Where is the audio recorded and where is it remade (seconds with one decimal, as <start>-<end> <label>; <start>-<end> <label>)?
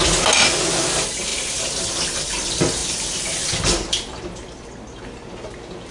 0.0-5.9 recorded